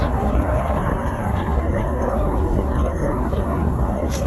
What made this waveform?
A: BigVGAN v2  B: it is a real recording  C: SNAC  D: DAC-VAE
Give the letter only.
C